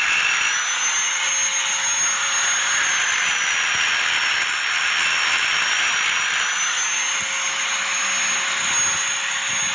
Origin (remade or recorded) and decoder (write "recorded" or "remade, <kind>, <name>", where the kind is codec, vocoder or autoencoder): recorded